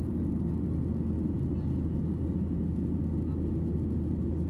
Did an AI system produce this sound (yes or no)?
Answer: no